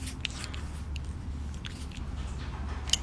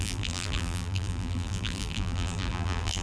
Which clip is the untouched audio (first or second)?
first